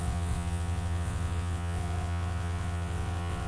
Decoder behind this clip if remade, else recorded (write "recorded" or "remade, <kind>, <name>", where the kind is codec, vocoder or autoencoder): remade, vocoder, WaveNeXt